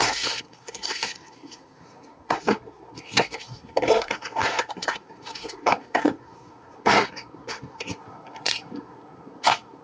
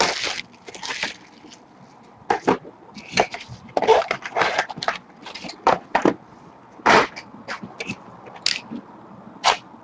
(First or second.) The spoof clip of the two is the first